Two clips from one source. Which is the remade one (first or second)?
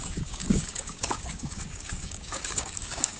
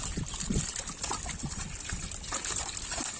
first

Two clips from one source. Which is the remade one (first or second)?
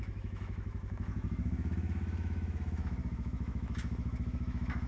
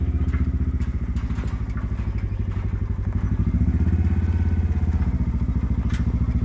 first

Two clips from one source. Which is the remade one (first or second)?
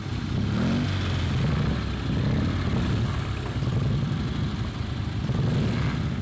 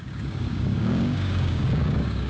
second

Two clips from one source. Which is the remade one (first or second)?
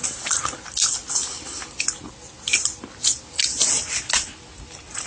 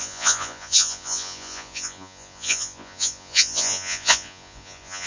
second